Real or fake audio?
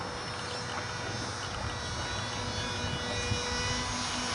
real